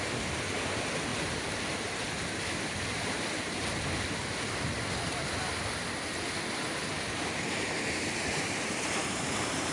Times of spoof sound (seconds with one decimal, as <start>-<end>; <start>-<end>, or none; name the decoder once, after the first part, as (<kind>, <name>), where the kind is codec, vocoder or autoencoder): 1.1-3.7 (vocoder, BigVGAN v2); 6.8-9.7